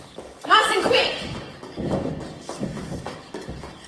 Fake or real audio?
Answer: fake